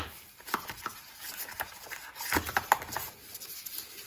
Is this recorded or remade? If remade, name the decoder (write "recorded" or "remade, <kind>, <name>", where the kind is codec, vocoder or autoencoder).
recorded